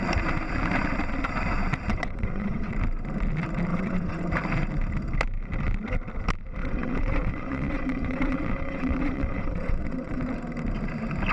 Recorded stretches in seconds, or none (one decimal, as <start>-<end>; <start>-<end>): 0.0-1.9; 2.7-3.7; 4.3-6.6; 10.2-11.3